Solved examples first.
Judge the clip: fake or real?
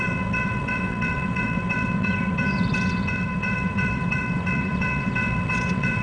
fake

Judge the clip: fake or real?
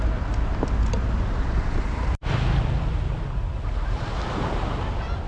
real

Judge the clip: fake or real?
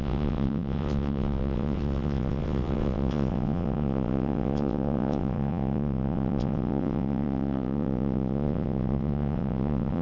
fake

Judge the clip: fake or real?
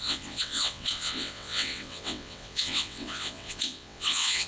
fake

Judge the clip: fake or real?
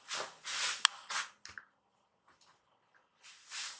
real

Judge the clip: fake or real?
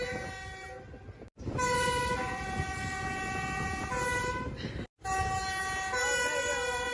real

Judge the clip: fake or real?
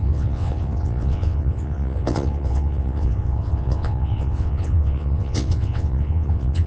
fake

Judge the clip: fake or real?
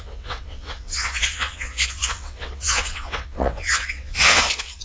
fake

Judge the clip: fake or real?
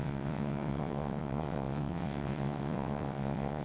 fake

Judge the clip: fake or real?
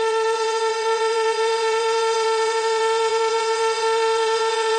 fake